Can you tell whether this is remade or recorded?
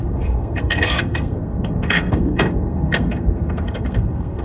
remade